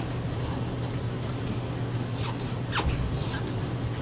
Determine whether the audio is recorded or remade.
recorded